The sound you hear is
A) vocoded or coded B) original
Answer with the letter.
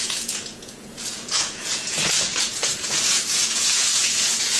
A